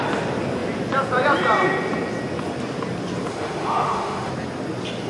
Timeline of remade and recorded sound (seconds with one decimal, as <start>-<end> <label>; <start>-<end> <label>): 0.0-3.3 recorded; 3.3-4.3 remade; 4.3-5.1 recorded